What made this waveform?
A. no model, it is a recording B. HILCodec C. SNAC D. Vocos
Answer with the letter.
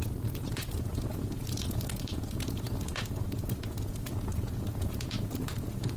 D